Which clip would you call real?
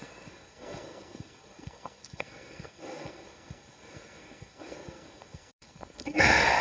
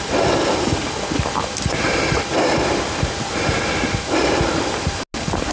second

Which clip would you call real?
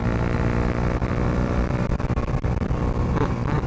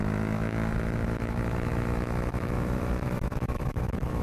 first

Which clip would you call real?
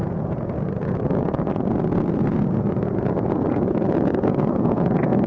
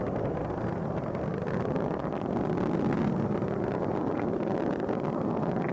second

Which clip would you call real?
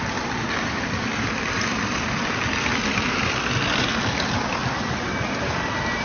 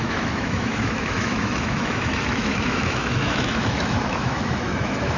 first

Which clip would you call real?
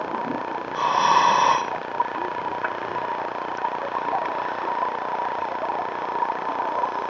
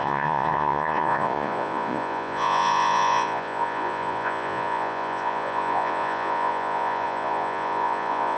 first